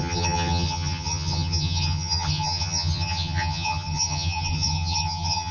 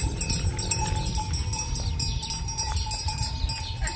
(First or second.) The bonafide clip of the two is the second